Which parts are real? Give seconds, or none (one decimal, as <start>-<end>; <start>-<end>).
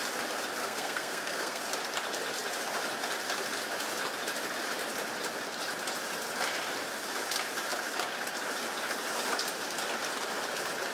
0.0-0.6; 1.6-10.9